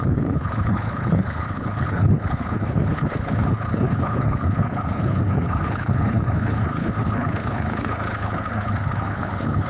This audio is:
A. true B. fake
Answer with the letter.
B